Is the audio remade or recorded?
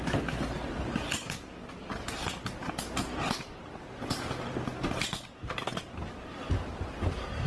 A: recorded